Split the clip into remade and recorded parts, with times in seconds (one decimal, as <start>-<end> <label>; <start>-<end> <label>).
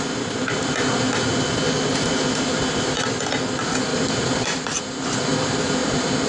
0.0-3.9 recorded; 3.9-4.8 remade; 4.8-5.8 recorded; 5.8-6.3 remade